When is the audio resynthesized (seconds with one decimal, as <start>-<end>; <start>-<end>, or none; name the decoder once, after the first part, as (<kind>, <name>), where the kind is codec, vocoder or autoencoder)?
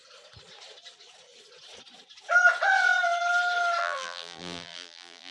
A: 3.8-5.3 (vocoder, BigVGAN v2)